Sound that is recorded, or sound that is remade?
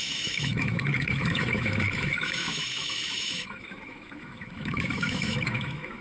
remade